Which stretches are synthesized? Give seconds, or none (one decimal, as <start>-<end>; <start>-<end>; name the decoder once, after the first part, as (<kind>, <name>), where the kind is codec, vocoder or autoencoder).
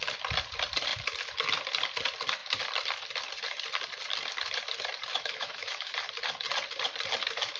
5.1-5.9 (autoencoder, DAC-VAE)